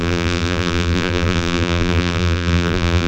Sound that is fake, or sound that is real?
fake